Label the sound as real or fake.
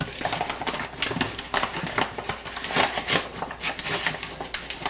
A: real